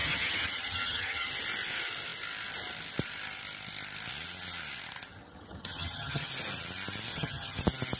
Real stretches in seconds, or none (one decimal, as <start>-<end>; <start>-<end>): 1.3-5.1; 6.3-7.1; 7.6-8.0